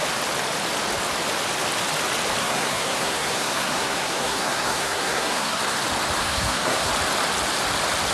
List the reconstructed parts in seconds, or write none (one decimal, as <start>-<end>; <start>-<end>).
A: 2.4-5.6; 6.2-6.9